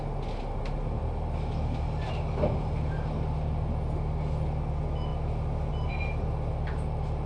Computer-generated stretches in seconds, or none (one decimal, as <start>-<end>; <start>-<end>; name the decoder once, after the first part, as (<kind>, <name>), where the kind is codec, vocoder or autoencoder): none